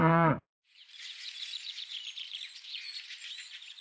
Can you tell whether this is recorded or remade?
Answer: remade